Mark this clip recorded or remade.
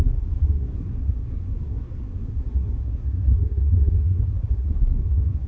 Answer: remade